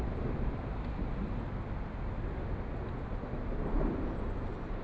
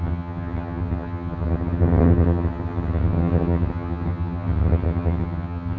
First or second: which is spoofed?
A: second